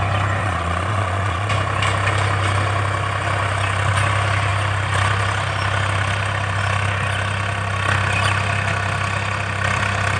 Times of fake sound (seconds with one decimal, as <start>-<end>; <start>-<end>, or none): 0.4-1.5